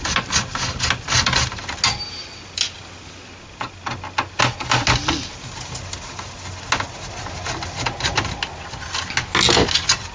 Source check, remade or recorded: recorded